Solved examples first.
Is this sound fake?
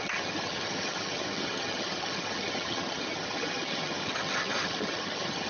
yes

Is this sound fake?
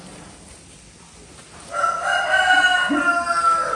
no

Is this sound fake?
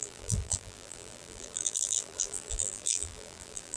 yes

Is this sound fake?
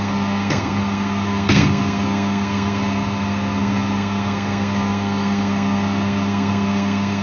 yes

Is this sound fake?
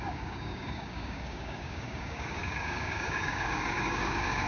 yes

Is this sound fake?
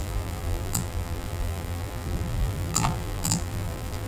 yes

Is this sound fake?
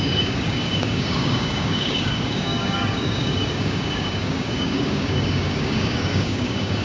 yes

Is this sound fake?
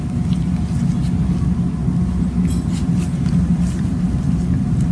no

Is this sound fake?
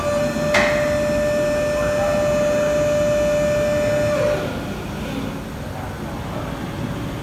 no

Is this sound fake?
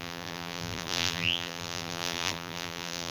yes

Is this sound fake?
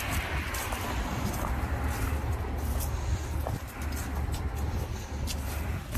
no